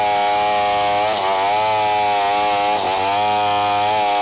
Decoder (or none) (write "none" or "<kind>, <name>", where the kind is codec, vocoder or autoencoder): none